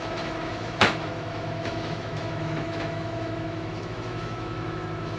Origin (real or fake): fake